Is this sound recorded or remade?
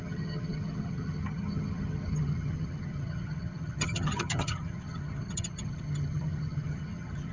remade